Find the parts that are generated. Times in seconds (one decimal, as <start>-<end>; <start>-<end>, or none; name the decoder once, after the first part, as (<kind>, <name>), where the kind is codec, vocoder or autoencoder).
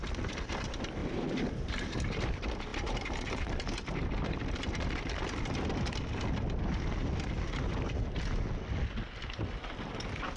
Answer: 1.0-1.7 (vocoder, BigVGAN v2); 2.7-3.3